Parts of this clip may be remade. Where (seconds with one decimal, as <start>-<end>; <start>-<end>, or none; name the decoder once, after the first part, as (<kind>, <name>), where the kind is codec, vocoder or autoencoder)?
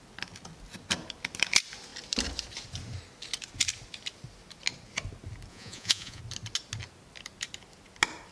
5.5-6.2 (vocoder, Vocos)